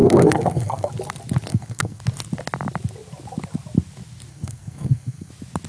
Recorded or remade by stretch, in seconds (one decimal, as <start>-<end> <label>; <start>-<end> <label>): 0.0-0.9 remade; 0.9-1.5 recorded; 1.5-2.0 remade; 2.0-4.3 recorded; 4.3-5.3 remade; 5.3-5.7 recorded